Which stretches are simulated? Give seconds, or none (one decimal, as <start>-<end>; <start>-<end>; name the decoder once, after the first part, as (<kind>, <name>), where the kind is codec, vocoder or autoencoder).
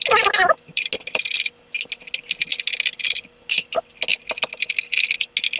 0.4-0.9 (vocoder, BigVGAN v2); 2.9-3.5